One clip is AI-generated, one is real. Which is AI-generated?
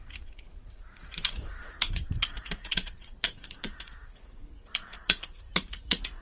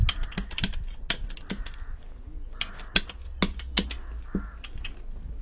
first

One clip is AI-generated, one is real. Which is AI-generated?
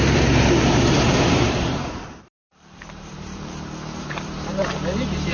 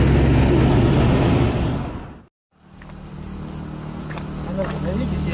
first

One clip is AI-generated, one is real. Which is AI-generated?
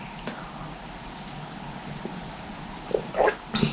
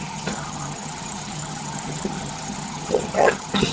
second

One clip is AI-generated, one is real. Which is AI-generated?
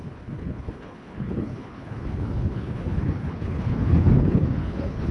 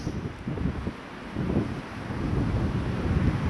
first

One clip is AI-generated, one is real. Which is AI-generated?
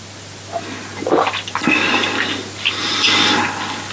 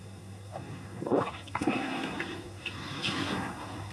second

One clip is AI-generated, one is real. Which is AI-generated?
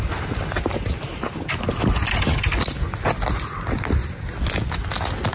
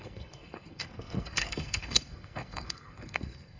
second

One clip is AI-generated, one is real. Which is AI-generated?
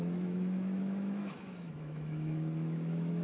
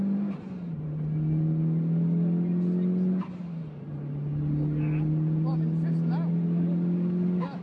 first